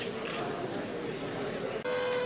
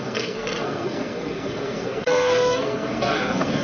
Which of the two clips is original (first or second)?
first